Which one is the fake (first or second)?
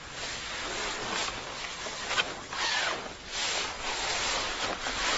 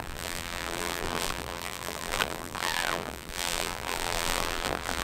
second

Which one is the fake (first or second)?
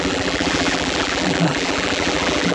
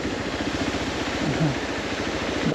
first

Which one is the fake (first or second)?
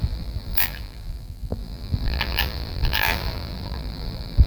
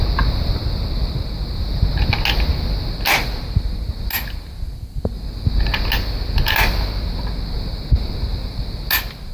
first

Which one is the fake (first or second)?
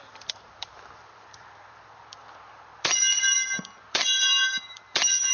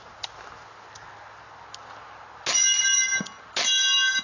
first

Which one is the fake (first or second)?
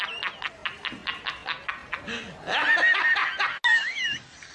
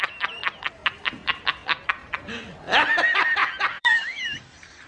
second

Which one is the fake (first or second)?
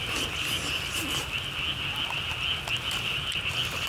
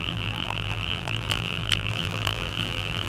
second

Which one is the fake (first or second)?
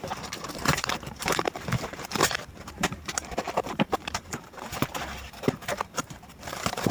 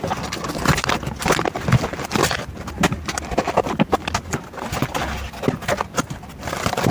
first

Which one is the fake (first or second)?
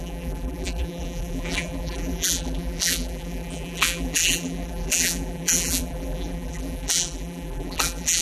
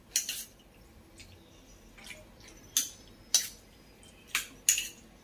first